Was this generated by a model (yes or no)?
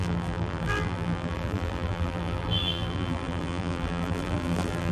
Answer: yes